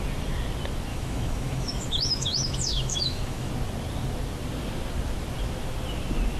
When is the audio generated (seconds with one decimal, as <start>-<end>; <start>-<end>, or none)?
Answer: 0.9-3.5